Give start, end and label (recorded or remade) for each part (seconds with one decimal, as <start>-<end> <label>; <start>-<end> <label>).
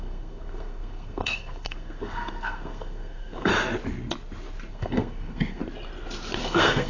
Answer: 0.0-3.5 remade; 3.5-4.7 recorded; 4.7-5.6 remade; 5.6-6.4 recorded; 6.4-6.9 remade